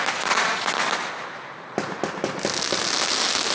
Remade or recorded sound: recorded